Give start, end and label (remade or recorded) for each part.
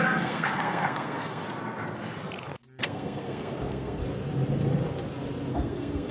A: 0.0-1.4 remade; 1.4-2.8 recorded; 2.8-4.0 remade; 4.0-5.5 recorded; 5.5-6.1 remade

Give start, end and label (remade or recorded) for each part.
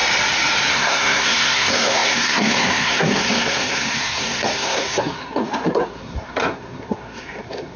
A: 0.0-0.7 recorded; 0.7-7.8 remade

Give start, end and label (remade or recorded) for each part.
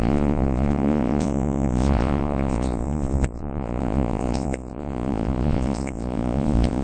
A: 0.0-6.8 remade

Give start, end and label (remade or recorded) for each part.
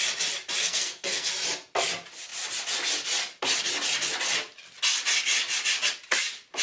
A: 0.0-0.6 recorded; 0.6-1.3 remade; 1.3-6.6 recorded